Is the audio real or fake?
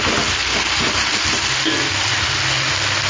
real